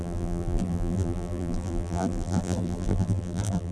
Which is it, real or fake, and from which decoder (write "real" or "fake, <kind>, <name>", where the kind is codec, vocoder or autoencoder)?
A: fake, vocoder, BigVGAN v2